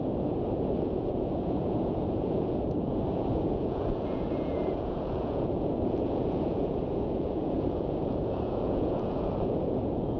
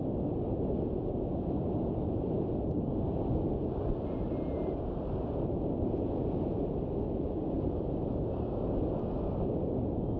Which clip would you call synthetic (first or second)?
first